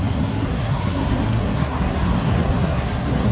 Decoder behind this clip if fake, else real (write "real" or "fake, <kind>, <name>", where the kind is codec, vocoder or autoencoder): fake, codec, SNAC